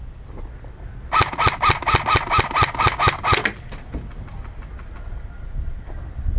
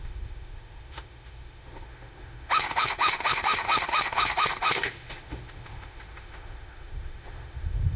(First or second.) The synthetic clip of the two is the second